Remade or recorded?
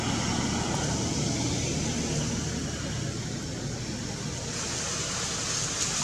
recorded